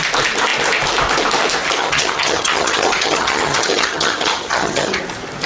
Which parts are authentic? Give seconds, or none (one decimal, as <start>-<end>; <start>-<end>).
0.0-1.8; 5.0-5.5